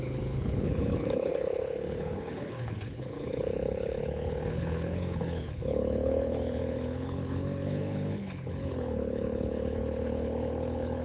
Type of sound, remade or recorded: remade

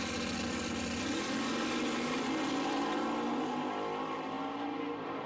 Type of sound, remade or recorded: recorded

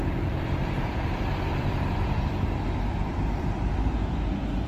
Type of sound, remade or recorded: remade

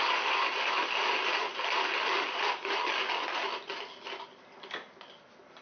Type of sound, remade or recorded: recorded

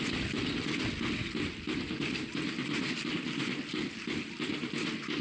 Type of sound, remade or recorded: recorded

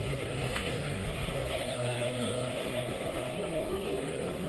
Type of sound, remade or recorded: remade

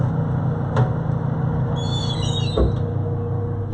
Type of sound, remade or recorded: recorded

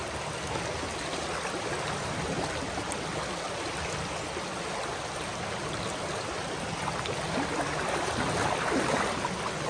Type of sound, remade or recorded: recorded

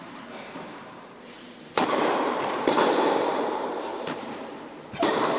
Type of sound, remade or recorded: remade